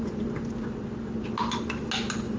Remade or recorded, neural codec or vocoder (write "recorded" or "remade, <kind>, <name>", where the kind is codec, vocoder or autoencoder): recorded